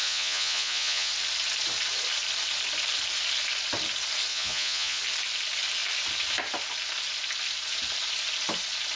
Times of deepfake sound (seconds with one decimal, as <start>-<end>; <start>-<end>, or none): 0.0-1.1; 4.3-5.0